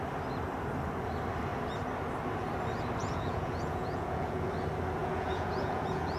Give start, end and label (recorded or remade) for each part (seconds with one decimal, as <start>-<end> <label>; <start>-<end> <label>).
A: 0.0-3.0 recorded; 3.0-4.4 remade; 4.4-5.0 recorded; 5.0-6.2 remade